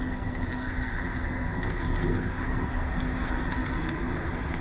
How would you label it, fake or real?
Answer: fake